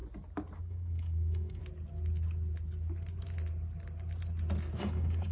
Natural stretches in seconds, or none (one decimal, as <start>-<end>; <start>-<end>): 0.0-0.6; 1.6-4.8